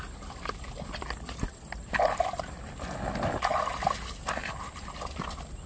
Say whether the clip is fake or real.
real